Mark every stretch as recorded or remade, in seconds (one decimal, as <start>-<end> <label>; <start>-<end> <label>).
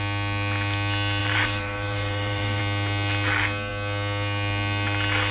0.0-1.2 recorded; 1.2-2.6 remade; 2.6-5.3 recorded